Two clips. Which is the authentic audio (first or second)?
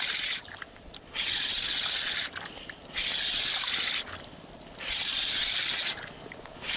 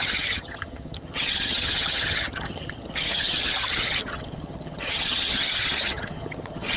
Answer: first